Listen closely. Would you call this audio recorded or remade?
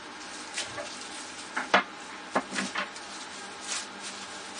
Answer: recorded